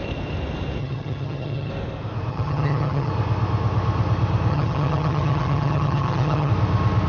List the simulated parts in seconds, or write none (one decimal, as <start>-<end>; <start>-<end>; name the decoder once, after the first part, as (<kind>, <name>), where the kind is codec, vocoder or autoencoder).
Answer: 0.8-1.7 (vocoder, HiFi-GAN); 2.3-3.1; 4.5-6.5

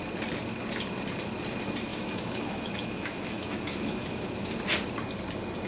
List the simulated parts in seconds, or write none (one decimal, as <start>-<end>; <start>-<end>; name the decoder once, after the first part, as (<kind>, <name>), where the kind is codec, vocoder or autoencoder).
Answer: 1.9-4.5 (autoencoder, DAC-VAE)

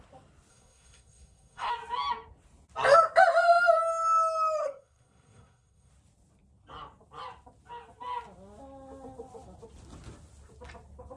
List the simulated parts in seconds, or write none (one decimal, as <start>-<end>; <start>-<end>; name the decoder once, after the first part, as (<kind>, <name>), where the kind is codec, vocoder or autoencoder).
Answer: 0.5-1.7 (codec, SNAC); 4.6-5.9

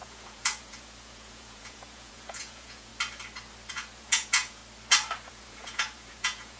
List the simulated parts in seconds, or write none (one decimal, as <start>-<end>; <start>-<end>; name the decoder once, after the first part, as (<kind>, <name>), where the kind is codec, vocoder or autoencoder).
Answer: 0.0-2.9 (vocoder, Vocos); 3.7-4.6; 5.3-6.6

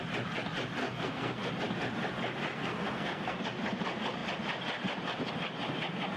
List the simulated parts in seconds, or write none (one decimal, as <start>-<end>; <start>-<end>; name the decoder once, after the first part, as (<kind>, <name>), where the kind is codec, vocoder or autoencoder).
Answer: 0.8-1.5 (codec, SNAC); 2.5-3.4